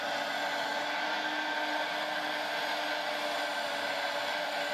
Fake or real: real